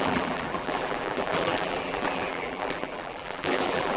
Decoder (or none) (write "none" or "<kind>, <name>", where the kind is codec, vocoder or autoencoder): vocoder, BigVGAN v2